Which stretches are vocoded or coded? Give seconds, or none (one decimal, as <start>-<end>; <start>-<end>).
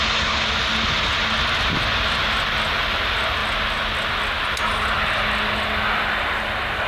none